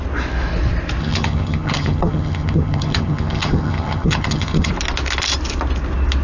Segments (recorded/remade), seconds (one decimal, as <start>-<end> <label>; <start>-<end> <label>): 0.0-1.0 recorded; 1.0-4.7 remade; 4.7-6.2 recorded